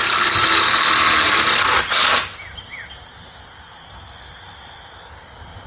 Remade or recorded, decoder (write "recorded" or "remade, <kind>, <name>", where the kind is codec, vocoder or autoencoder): recorded